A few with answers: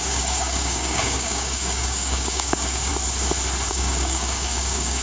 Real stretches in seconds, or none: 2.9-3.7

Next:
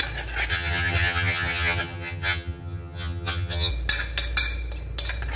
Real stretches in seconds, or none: 0.0-0.5; 3.7-5.4

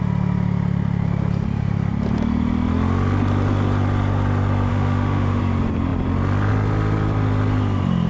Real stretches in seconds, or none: 0.0-4.7; 5.4-8.1

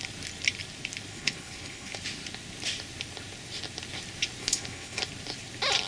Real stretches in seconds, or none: 0.0-1.1; 2.0-4.4; 5.0-5.9

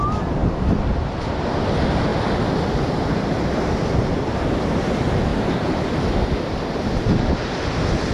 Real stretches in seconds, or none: 0.0-5.3; 6.0-8.1

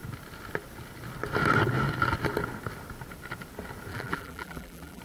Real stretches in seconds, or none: 0.0-3.9

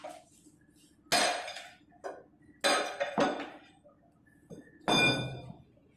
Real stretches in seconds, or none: 0.0-6.0

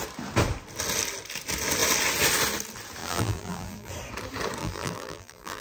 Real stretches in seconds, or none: 0.0-3.0; 3.9-4.6